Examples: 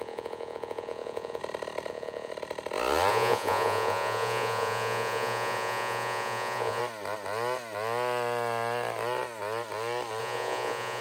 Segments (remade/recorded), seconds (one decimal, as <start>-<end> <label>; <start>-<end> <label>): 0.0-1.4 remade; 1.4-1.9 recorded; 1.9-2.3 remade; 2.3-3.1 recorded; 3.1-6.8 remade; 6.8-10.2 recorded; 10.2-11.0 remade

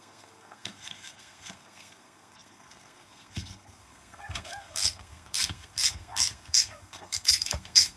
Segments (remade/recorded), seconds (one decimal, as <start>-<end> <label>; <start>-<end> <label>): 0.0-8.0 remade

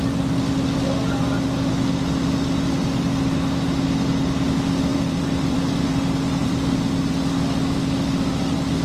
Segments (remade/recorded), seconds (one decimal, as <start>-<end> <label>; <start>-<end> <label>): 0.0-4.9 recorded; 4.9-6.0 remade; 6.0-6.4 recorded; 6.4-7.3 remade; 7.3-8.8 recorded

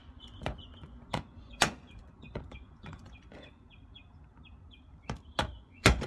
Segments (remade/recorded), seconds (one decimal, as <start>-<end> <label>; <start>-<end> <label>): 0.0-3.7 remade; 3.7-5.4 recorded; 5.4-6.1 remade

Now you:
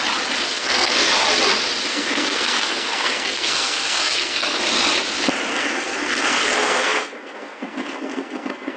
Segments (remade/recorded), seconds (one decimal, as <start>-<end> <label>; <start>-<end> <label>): 0.0-0.5 recorded; 0.5-1.1 remade; 1.1-1.9 recorded; 1.9-4.6 remade; 4.6-5.5 recorded; 5.5-8.8 remade

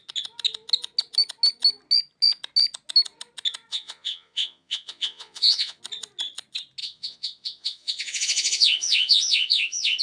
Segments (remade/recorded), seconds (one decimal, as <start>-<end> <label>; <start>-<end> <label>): 0.0-3.7 recorded; 3.7-5.8 remade; 5.8-6.8 recorded; 6.8-10.0 remade

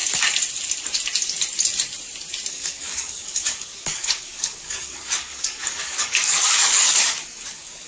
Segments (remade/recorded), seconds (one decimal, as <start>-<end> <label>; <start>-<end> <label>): 0.0-2.5 recorded; 2.5-7.9 remade